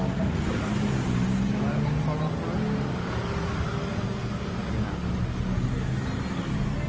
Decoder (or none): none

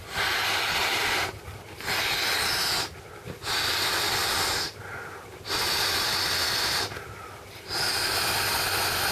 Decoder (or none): none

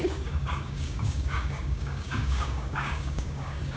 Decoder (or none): codec, DAC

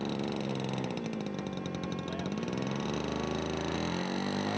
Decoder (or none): none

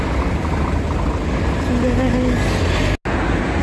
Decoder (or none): none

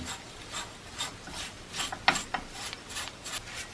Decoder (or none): none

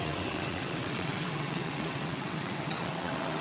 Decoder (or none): vocoder, WaveNeXt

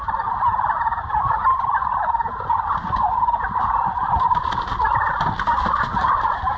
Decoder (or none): none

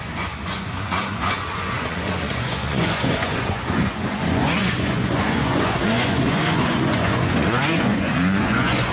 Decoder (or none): vocoder, Vocos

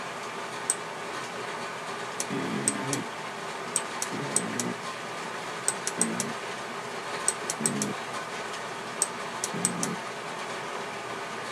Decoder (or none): none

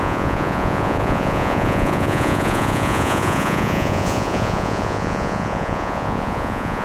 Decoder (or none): vocoder, Vocos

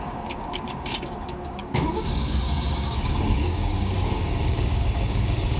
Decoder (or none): codec, DAC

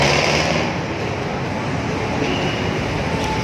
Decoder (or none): none